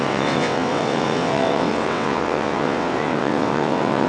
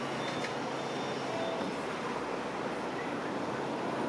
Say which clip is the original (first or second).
second